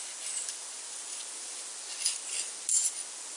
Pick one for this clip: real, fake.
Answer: real